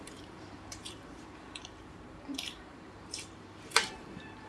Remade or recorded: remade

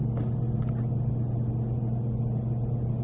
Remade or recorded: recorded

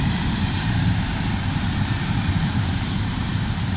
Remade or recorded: remade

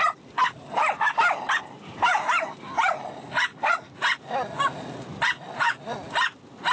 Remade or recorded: recorded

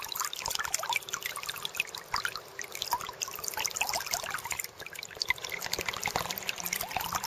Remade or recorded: remade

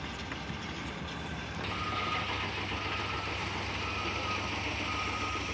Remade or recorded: recorded